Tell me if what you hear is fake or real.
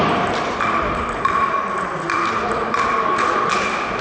fake